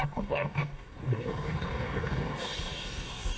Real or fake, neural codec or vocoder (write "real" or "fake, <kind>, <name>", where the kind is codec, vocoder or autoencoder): fake, codec, DAC